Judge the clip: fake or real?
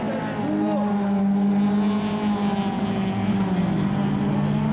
real